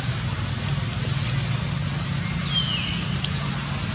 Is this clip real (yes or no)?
yes